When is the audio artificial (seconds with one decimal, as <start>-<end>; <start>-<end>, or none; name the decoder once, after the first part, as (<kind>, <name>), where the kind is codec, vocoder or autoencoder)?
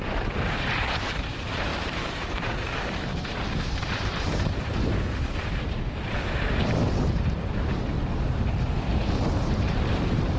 1.7-5.4 (vocoder, BigVGAN v2)